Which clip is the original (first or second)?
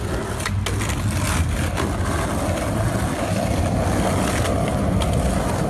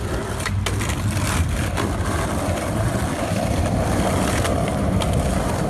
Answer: first